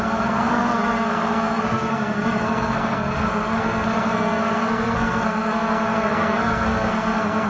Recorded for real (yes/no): no